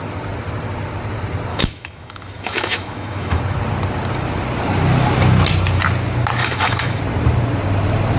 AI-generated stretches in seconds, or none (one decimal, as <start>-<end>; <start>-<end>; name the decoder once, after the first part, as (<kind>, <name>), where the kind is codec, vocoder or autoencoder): 1.5-3.4 (autoencoder, DAC-VAE); 6.4-7.0